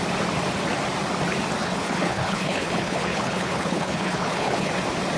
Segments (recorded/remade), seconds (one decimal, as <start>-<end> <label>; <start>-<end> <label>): 0.0-1.6 recorded; 1.6-4.7 remade; 4.7-5.2 recorded

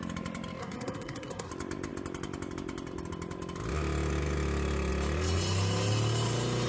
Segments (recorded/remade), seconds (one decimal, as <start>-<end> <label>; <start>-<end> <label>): 0.0-0.6 recorded; 0.6-1.5 remade; 1.5-6.7 recorded

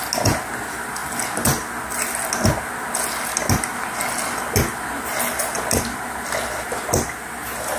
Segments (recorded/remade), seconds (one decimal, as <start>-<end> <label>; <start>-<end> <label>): 0.0-7.8 recorded